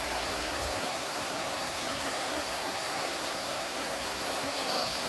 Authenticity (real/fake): fake